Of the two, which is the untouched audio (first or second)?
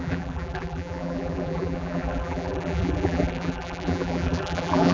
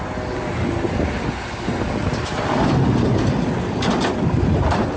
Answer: second